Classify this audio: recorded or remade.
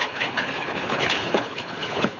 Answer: remade